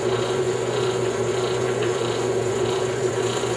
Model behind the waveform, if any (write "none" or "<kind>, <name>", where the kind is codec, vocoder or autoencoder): vocoder, Vocos